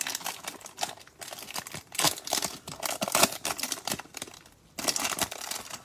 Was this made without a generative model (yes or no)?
yes